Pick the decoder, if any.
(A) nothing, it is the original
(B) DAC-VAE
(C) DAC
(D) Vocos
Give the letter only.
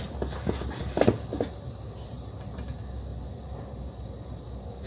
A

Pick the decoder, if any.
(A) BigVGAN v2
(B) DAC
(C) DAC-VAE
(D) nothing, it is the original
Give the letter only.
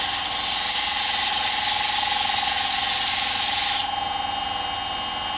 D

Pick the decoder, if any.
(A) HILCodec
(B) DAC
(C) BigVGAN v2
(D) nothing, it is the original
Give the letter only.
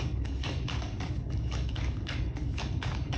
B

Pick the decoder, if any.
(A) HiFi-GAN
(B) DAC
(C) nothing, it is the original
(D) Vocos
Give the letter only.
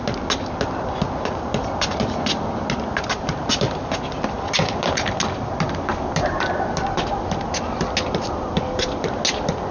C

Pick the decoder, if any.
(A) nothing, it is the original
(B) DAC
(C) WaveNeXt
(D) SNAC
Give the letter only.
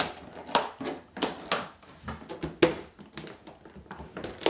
A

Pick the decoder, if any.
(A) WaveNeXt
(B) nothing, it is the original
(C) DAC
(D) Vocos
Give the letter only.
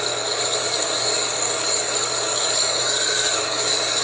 C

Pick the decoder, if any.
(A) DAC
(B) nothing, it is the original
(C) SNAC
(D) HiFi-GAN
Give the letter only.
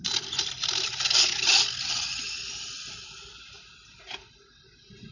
B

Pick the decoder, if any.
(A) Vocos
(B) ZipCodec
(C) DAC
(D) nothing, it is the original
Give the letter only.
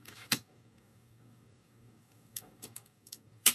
C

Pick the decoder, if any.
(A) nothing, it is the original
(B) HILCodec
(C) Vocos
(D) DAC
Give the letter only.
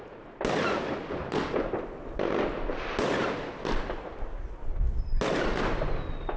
A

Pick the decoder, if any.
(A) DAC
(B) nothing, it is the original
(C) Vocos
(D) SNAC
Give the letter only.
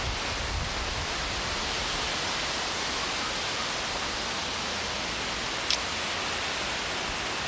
B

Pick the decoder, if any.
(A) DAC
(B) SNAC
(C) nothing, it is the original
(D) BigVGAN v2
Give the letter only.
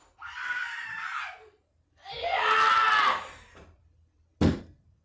C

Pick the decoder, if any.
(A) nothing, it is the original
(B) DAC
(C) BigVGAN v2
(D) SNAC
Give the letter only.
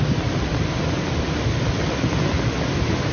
A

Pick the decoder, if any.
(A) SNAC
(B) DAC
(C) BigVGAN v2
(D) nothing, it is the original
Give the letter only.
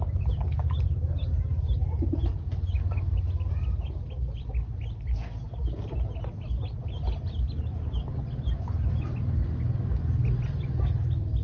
D